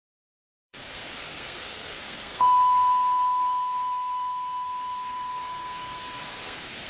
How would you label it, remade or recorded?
remade